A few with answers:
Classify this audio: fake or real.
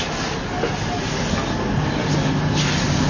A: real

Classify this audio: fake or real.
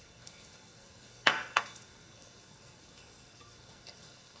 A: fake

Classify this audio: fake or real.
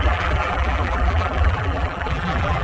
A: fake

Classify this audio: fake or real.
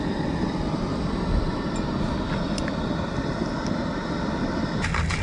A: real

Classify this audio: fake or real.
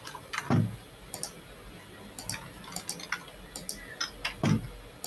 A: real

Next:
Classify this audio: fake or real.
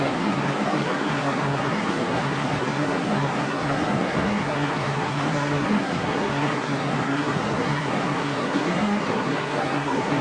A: fake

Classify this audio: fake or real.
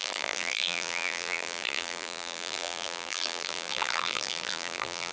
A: fake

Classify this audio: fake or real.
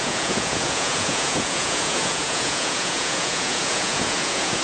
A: fake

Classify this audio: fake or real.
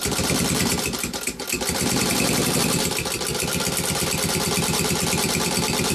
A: fake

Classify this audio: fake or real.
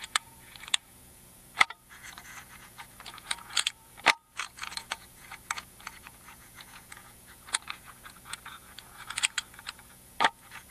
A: fake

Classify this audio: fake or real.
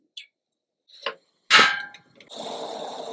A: real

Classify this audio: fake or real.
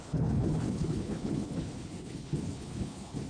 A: fake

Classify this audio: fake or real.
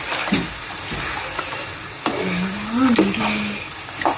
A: real